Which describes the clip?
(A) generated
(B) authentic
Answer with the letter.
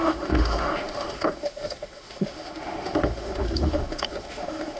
A